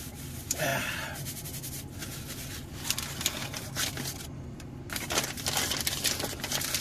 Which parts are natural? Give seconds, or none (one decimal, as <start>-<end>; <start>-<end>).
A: 0.0-6.8